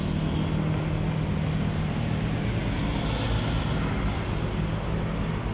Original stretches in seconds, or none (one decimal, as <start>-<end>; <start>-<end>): 0.0-5.5